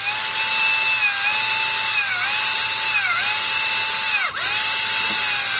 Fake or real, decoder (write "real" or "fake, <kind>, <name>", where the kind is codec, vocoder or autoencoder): real